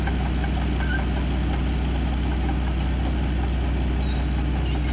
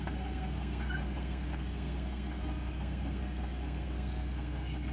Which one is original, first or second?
first